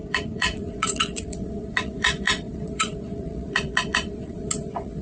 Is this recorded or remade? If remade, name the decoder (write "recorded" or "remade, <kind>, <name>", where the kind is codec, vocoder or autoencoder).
remade, vocoder, Vocos